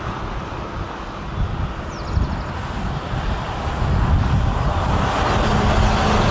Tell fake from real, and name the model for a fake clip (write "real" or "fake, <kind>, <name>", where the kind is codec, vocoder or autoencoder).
real